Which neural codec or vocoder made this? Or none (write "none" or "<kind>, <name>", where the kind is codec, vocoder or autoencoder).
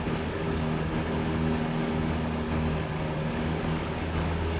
codec, DAC